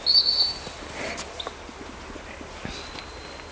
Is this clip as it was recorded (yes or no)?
yes